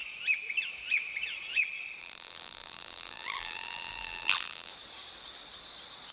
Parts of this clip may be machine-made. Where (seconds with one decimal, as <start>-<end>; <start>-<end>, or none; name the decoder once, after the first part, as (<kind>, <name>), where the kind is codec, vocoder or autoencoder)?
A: 2.0-4.7 (vocoder, BigVGAN v2)